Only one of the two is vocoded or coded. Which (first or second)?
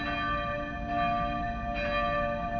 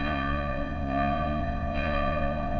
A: second